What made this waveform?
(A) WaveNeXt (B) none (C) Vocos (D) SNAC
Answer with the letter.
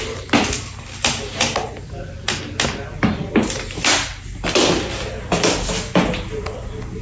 B